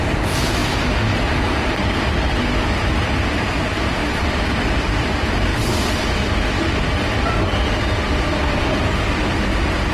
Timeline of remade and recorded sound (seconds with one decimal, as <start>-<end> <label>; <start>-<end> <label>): 0.0-4.0 remade; 4.0-4.6 recorded; 4.6-5.5 remade; 5.5-8.2 recorded; 8.2-9.9 remade